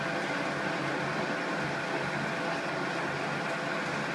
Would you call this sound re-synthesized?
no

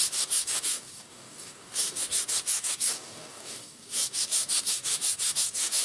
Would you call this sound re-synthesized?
yes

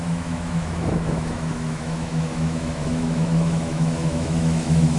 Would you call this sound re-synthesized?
yes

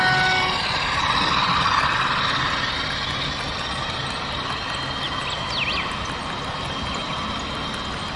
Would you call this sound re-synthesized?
no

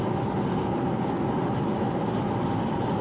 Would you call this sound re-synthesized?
no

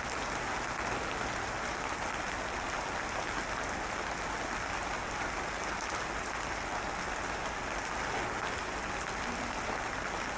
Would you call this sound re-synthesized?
no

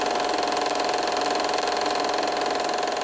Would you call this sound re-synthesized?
no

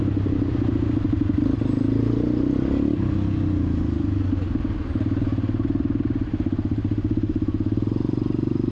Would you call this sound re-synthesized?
no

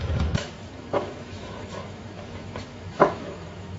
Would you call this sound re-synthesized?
yes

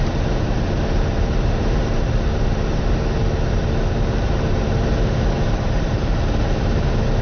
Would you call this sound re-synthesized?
yes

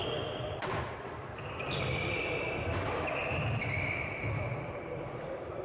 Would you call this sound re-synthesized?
yes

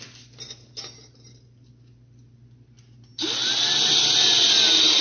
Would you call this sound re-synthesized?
no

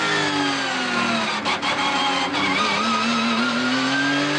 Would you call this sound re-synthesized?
no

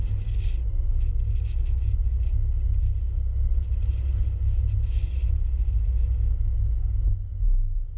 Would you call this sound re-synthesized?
no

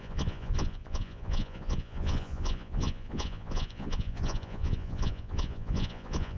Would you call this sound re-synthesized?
yes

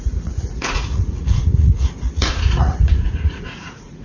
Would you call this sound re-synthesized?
yes